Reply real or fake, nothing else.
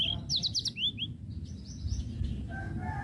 real